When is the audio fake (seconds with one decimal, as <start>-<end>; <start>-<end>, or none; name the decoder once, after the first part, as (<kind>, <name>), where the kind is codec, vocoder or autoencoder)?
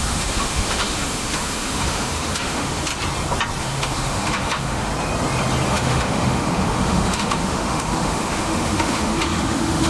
0.0-2.9 (autoencoder, DAC-VAE); 3.6-4.9; 5.7-9.9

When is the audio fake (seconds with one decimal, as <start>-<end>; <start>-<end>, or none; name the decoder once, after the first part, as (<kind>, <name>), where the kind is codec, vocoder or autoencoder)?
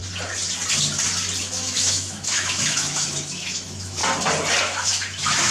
1.4-4.0 (autoencoder, DAC-VAE); 4.6-5.5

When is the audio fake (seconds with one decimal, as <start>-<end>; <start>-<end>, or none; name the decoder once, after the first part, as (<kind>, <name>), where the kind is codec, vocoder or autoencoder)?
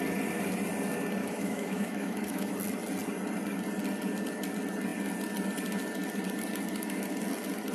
1.2-2.5 (autoencoder, DAC-VAE)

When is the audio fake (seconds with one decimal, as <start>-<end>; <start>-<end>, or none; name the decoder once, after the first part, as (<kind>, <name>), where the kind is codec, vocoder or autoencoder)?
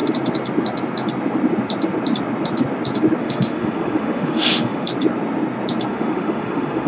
3.2-4.9 (autoencoder, DAC-VAE); 5.9-6.9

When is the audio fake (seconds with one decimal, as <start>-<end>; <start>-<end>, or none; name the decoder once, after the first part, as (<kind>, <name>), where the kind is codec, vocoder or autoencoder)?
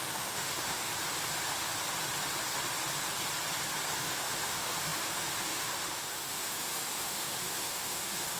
0.0-0.9 (autoencoder, DAC-VAE); 4.0-8.4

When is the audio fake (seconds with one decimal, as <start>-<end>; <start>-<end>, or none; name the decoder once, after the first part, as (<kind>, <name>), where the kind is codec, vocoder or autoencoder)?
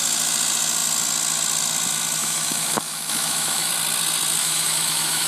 2.2-3.7 (autoencoder, DAC-VAE); 4.4-5.3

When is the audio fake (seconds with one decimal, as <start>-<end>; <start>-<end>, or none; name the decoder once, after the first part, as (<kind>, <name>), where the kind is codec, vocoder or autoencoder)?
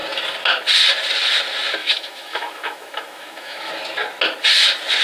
1.8-3.7 (autoencoder, DAC-VAE)